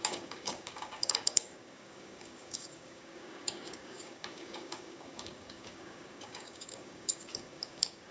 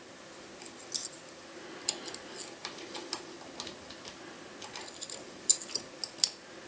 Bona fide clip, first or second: second